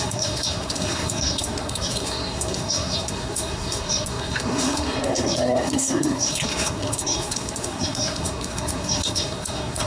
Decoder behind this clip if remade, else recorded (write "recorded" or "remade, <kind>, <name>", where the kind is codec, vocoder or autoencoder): remade, codec, SNAC